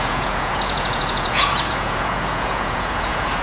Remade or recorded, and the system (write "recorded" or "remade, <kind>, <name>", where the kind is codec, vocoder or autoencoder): remade, vocoder, Vocos